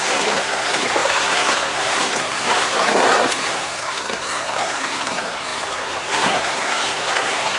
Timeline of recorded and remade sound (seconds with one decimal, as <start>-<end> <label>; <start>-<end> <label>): 0.0-7.6 remade